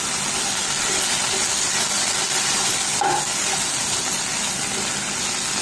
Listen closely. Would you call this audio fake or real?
real